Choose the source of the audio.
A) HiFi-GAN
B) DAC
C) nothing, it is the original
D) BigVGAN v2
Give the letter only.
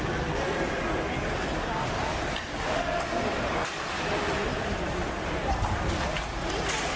C